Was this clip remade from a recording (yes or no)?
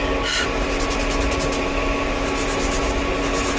no